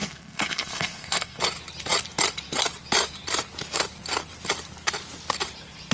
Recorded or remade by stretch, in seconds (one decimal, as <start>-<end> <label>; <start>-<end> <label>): 0.0-1.4 remade; 1.4-5.9 recorded